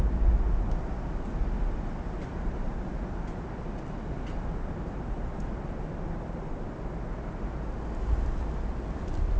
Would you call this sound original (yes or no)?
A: yes